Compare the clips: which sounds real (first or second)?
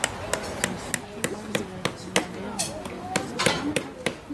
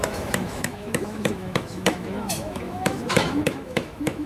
first